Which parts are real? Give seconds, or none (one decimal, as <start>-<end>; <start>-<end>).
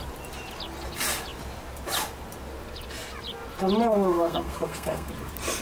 0.0-3.9; 5.1-5.6